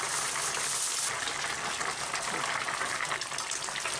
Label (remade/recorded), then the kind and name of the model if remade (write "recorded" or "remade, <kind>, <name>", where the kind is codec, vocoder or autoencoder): recorded